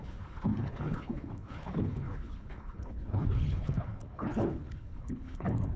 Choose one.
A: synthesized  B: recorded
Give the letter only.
A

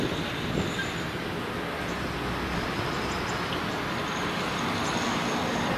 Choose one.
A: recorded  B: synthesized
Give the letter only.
A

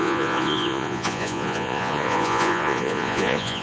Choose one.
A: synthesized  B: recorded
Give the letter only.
A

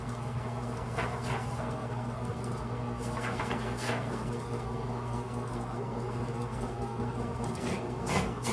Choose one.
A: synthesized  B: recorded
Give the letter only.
A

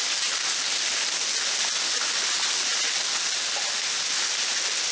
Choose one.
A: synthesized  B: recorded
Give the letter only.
B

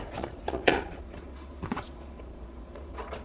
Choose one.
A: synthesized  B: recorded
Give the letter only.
A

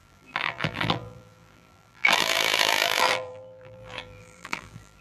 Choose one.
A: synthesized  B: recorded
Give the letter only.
A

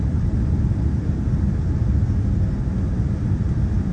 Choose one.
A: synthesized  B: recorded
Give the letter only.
B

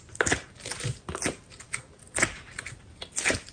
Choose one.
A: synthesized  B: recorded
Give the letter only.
B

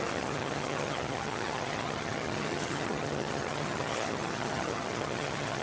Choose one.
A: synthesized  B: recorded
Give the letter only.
A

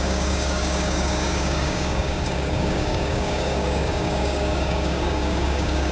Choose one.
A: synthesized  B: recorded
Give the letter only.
A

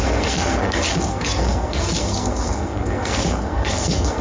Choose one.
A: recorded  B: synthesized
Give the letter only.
B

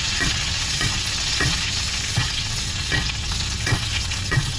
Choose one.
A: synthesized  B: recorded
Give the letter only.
A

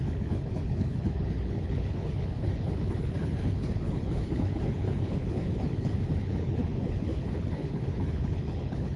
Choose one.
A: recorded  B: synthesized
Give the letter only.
B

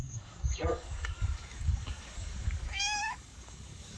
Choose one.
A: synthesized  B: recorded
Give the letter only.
A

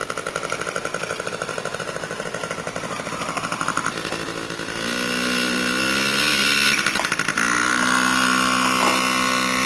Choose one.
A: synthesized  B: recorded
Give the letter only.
B